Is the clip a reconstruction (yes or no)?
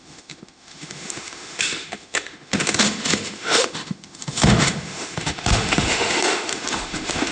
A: yes